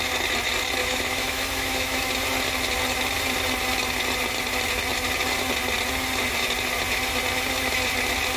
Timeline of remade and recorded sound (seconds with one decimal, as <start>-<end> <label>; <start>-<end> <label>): 0.0-0.8 recorded; 0.8-2.1 remade; 2.1-8.4 recorded